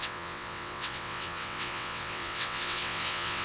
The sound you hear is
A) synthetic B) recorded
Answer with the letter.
A